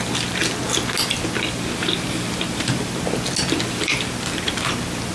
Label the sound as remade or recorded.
recorded